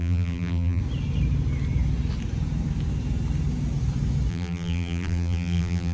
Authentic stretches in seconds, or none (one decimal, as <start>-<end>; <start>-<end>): 0.8-4.3